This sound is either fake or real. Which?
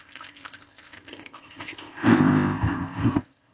fake